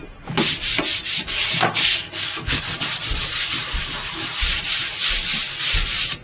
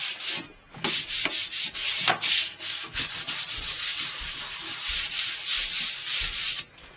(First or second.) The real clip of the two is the second